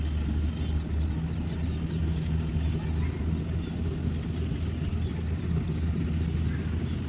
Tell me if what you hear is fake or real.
real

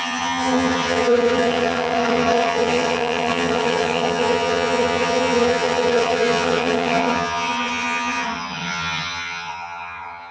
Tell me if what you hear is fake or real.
fake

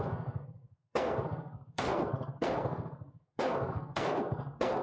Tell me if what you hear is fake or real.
fake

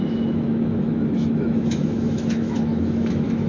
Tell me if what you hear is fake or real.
fake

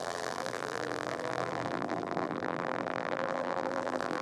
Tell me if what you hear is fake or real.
fake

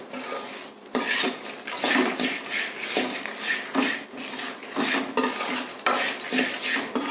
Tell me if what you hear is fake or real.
real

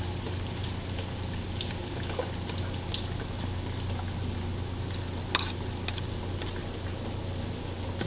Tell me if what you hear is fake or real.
real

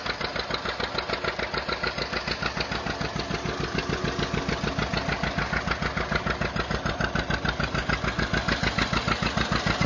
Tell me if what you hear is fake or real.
real